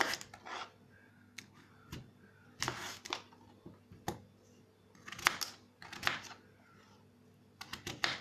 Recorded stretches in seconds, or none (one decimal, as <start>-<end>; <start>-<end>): 0.0-1.1; 1.7-8.2